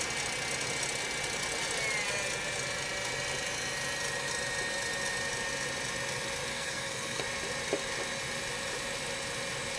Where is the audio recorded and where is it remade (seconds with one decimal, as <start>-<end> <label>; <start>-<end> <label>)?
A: 0.0-6.5 recorded; 6.5-7.2 remade; 7.2-9.8 recorded